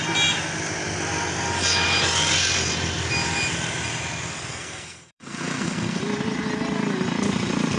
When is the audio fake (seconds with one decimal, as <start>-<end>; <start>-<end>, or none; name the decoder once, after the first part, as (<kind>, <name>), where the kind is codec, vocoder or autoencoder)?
4.5-6.0 (codec, SNAC)